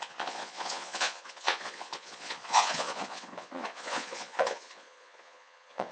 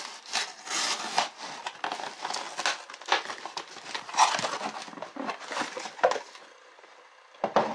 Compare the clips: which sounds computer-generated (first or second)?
first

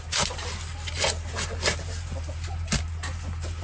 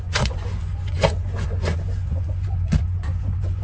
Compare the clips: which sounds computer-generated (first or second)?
second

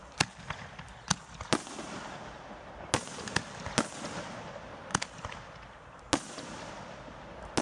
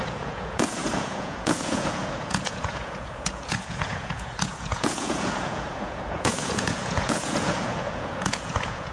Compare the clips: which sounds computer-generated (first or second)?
second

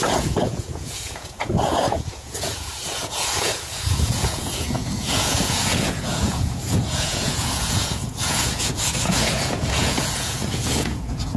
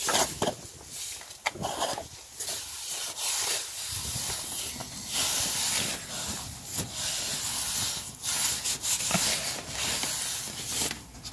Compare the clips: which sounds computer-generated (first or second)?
first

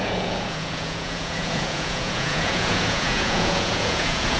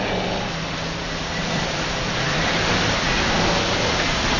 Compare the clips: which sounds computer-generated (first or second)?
first